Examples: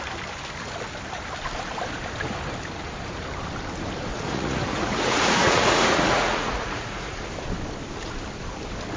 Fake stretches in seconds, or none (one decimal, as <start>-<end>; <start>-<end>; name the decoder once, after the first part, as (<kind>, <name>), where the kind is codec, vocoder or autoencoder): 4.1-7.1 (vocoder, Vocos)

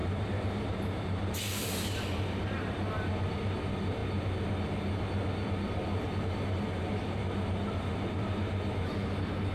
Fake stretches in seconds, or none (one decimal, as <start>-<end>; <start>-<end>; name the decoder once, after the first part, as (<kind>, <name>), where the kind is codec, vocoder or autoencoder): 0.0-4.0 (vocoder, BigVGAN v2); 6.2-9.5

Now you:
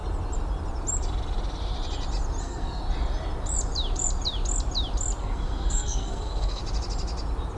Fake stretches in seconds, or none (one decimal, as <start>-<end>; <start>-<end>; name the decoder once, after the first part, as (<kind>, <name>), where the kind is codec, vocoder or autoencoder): 2.4-2.8 (codec, SNAC); 5.2-6.6

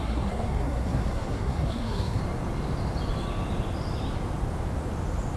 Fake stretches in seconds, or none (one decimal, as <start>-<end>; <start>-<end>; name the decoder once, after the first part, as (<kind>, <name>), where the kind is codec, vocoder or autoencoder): 0.0-2.2 (codec, SNAC)

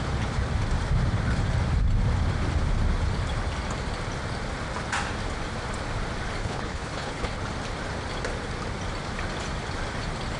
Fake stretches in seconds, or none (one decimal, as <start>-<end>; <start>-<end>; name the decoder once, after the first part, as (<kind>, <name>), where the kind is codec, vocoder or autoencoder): 6.4-7.4 (codec, HILCodec)

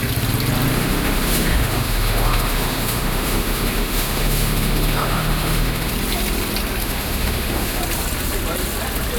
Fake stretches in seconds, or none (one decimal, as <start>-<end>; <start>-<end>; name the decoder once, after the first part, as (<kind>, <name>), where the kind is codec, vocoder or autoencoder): 0.7-5.9 (autoencoder, DAC-VAE); 6.8-7.8

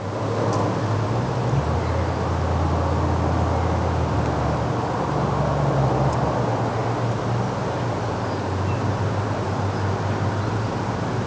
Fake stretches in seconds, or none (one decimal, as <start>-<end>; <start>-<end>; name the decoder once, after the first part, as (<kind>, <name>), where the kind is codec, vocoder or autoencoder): none

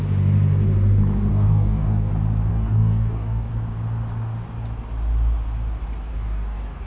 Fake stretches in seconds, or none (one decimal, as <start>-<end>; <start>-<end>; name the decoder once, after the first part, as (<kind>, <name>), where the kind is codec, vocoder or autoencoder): 1.3-2.1 (codec, DAC); 2.5-3.5; 6.1-6.9